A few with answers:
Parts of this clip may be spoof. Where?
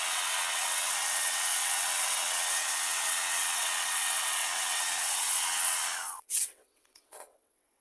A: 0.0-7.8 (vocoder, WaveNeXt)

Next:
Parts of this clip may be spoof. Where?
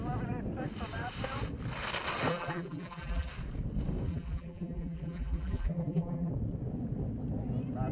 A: 2.3-3.3 (vocoder, BigVGAN v2); 4.1-6.3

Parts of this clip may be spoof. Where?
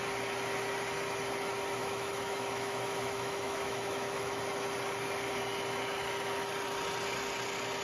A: 1.8-4.4 (autoencoder, DAC-VAE)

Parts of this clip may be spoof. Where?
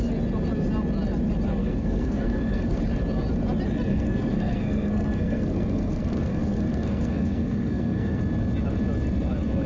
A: 1.6-2.8 (codec, SNAC); 3.9-8.2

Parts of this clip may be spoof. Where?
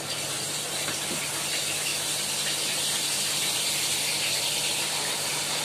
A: none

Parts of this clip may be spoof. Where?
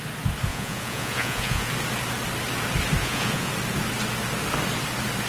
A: 0.5-1.7 (vocoder, Vocos); 3.0-3.5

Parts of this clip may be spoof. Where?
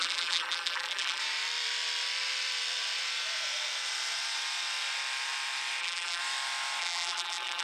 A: 0.0-1.2 (vocoder, BigVGAN v2); 5.8-6.2; 6.8-7.6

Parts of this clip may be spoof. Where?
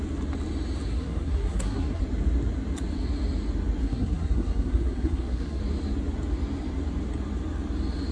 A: 0.9-2.0 (codec, SNAC); 3.8-5.6